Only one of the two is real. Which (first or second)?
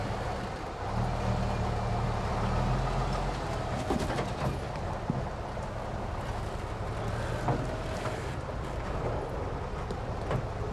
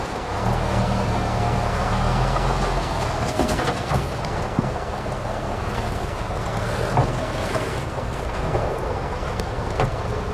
first